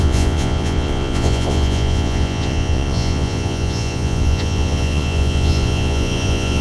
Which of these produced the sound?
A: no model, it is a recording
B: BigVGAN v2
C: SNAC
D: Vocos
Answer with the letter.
D